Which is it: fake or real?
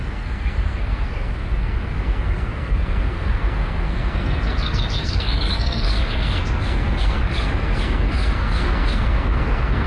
fake